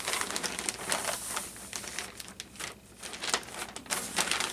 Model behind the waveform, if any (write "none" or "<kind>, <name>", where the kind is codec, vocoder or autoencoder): none